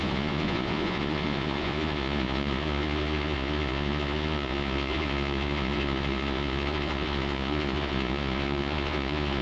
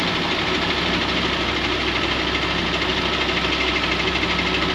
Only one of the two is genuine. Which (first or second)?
second